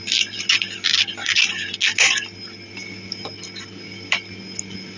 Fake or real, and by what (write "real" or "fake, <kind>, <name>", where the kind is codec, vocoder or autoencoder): real